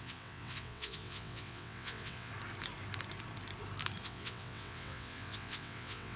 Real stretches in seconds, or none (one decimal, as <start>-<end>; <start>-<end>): 2.3-4.0